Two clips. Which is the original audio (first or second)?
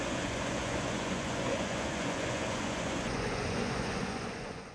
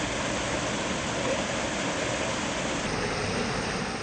second